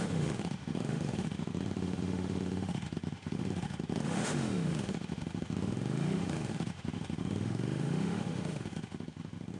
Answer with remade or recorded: remade